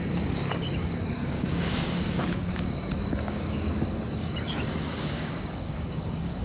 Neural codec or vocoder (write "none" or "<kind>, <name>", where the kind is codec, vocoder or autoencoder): codec, DAC